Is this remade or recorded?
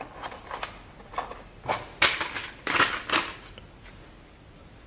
recorded